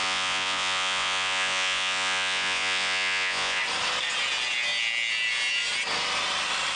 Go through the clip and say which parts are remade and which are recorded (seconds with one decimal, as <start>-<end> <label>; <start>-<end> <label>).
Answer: 0.0-3.6 remade; 3.6-6.8 recorded